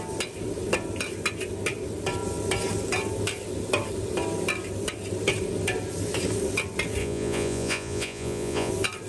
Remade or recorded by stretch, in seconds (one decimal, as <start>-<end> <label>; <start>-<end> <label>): 0.0-7.0 recorded; 7.0-8.7 remade; 8.7-9.1 recorded